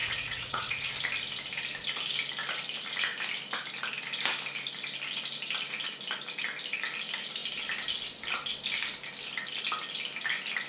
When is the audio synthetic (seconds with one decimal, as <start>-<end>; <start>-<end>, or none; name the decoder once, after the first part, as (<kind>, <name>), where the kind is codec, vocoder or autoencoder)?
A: 0.0-0.9 (vocoder, Vocos)